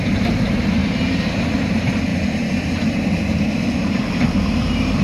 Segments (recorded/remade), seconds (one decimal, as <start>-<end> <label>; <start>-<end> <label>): 0.0-0.8 remade; 0.8-1.4 recorded; 1.4-5.0 remade